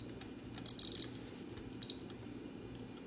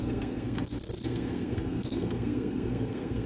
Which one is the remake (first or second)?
second